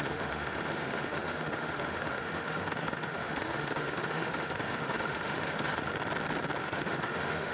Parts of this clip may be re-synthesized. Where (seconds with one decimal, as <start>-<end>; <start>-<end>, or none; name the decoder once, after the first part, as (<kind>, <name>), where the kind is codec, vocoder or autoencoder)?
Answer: 0.0-5.9 (autoencoder, DAC-VAE); 6.6-7.5